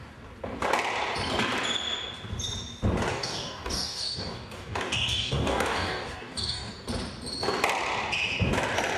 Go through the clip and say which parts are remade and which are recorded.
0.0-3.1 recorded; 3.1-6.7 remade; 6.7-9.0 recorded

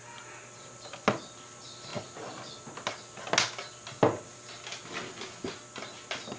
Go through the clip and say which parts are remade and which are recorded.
0.0-6.4 recorded

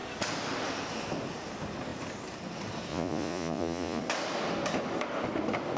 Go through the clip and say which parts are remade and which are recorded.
0.0-2.9 recorded; 2.9-4.0 remade; 4.0-5.8 recorded

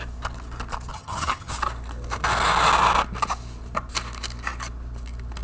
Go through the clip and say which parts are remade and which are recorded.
0.0-0.9 recorded; 0.9-1.5 remade; 1.5-5.4 recorded